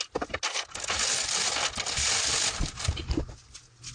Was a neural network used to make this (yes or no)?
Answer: no